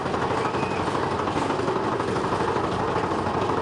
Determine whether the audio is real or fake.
real